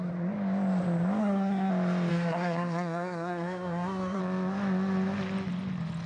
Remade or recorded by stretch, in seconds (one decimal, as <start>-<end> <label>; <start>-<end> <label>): 0.0-1.2 recorded; 1.2-1.7 remade; 1.7-2.1 recorded; 2.1-4.2 remade; 4.2-6.1 recorded